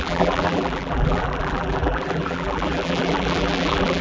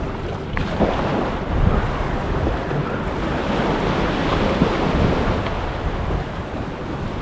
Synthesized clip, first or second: first